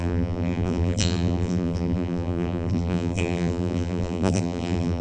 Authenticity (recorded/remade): remade